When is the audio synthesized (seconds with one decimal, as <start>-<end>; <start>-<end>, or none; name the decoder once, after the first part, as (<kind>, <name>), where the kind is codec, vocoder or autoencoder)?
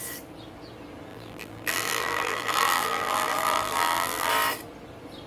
1.1-4.3 (vocoder, BigVGAN v2)